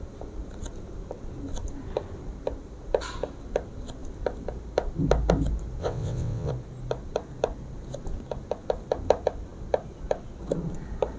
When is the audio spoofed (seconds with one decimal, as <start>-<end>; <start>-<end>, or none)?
5.8-6.5